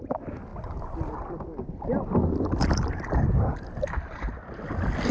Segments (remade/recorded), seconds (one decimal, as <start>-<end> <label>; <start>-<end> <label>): 0.0-5.1 recorded